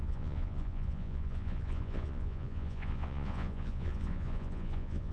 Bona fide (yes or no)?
no